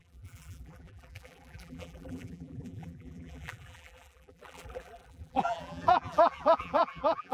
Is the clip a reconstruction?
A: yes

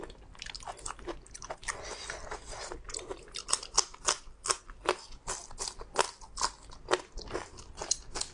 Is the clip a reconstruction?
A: no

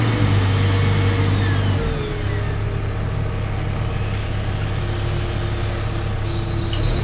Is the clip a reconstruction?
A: no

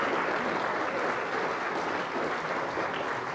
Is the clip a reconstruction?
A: no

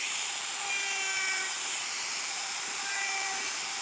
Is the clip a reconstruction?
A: yes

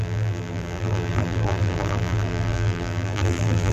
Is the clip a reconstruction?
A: yes